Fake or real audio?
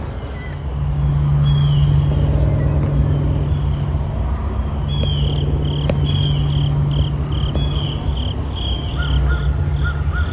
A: real